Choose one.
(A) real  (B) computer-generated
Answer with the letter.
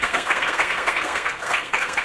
B